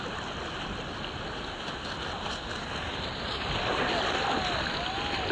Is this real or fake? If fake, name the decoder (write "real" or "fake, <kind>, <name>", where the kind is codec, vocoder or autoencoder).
real